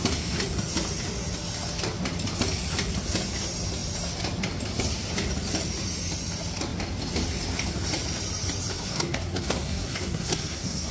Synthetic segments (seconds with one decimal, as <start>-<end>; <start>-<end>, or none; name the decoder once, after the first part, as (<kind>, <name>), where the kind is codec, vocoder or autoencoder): 8.7-10.9 (codec, SNAC)